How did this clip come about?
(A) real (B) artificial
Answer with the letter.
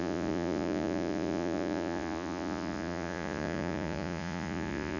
B